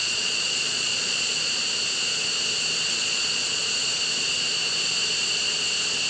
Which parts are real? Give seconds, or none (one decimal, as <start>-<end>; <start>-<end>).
1.5-2.9; 3.6-6.1